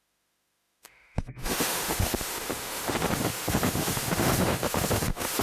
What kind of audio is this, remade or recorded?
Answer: remade